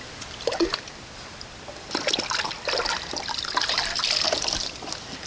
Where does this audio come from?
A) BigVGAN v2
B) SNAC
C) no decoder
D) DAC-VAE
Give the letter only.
C